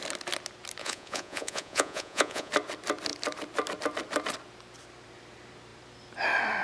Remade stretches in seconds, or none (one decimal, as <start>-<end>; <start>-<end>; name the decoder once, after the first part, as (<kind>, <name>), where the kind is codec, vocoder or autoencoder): 0.8-2.5 (vocoder, Vocos)